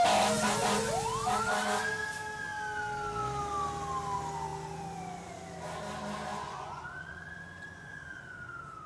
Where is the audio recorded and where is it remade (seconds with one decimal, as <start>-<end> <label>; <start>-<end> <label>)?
0.0-6.3 recorded; 6.3-8.9 remade